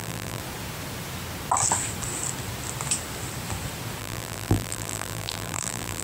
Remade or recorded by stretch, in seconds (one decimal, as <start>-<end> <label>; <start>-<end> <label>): 0.0-0.4 remade; 0.4-4.0 recorded; 4.0-6.0 remade